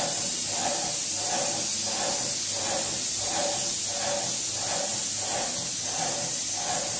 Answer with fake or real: real